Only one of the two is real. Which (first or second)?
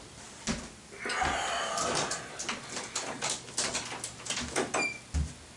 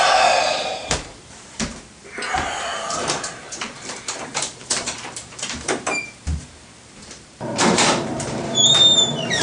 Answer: first